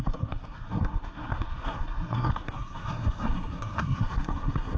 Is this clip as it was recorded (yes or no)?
no